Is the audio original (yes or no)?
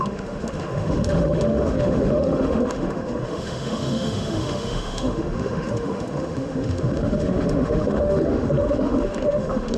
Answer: no